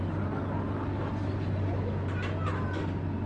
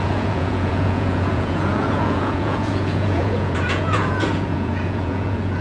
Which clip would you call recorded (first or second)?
first